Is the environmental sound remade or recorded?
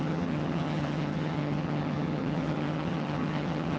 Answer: remade